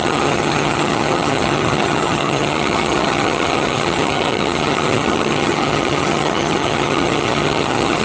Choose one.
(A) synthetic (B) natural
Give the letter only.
A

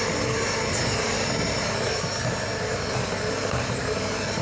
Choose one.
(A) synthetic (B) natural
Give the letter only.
B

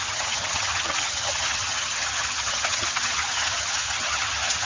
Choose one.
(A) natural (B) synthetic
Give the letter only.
B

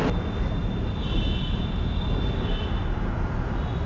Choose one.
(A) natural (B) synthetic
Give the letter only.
A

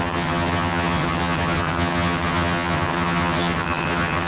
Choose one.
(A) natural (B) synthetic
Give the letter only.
B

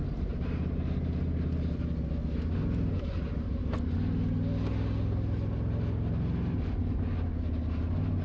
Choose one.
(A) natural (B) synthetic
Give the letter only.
A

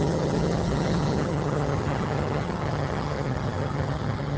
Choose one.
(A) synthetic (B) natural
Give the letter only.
A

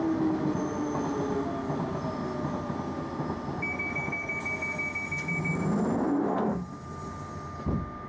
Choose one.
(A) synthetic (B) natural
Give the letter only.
B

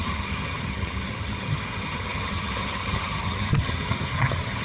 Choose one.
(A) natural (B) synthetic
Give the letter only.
B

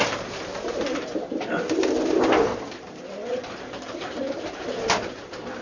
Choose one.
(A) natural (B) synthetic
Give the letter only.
A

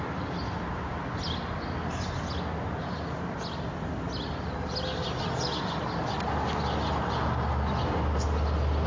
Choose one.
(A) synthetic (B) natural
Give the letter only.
B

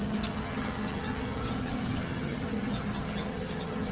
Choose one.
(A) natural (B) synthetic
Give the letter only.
B